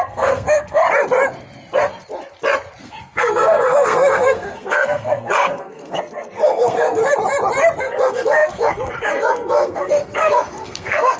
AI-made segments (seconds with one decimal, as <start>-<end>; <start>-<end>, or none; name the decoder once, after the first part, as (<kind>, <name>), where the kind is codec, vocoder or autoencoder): 0.0-0.8 (codec, SNAC); 2.8-7.0; 7.8-11.2